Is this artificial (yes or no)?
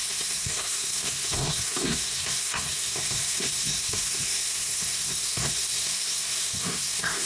yes